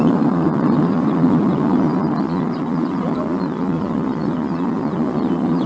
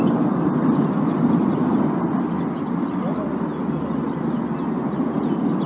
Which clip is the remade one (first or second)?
first